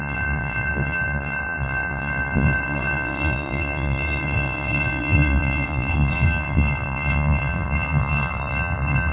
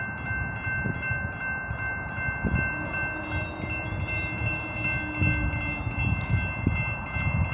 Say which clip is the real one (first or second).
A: second